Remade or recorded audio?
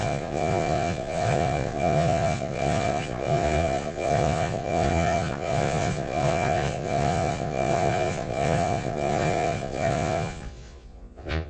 remade